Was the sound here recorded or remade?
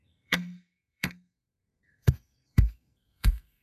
remade